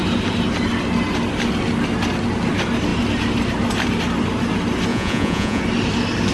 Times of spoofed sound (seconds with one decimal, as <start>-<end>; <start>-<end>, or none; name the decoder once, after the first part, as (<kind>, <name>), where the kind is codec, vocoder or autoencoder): 4.9-5.6 (vocoder, Vocos)